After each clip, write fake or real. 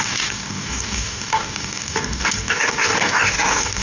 fake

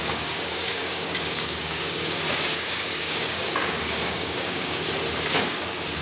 fake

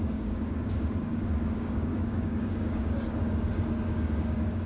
fake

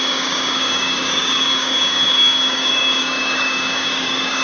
fake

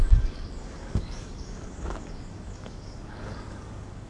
fake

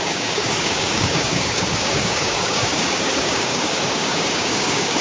fake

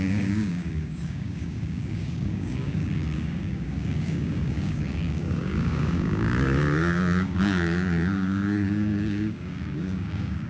fake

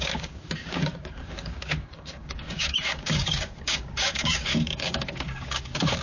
fake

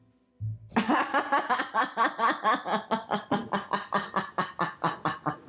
real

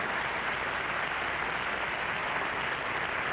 real